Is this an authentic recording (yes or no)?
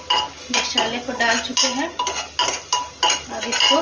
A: yes